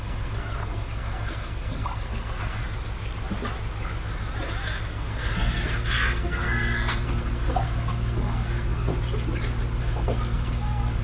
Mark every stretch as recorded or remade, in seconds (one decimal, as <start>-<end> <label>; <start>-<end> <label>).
0.0-2.6 remade; 2.6-4.9 recorded; 4.9-8.9 remade; 8.9-9.8 recorded; 9.8-11.0 remade

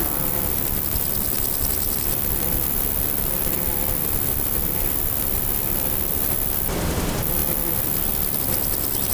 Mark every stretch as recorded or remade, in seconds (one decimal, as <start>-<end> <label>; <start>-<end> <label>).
0.0-9.1 recorded

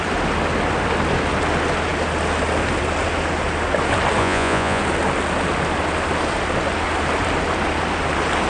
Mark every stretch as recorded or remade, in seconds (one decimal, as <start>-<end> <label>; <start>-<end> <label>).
0.0-4.2 recorded; 4.2-4.8 remade; 4.8-8.5 recorded

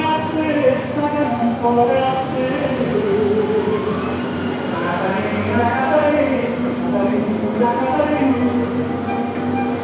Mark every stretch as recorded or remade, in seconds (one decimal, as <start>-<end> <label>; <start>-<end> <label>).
0.0-9.8 recorded